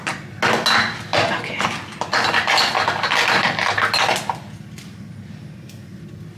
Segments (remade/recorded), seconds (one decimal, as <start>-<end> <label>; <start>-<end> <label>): 0.0-6.4 recorded